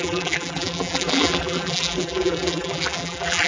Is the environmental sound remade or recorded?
remade